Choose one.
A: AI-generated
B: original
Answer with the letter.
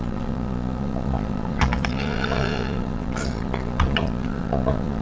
A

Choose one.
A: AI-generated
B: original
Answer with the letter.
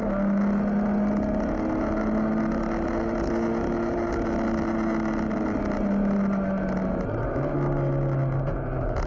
B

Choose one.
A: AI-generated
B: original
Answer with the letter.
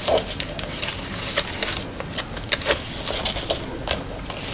B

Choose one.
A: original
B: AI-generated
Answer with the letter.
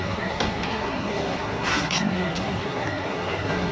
B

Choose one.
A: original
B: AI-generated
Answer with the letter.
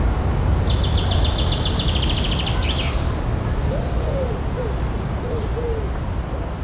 A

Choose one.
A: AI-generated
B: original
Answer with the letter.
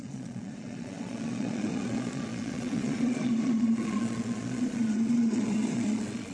A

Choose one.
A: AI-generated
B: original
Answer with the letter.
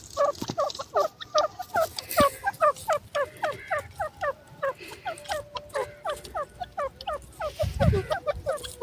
B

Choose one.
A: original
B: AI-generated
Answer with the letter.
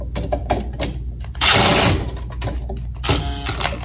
A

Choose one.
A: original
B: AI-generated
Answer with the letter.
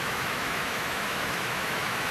B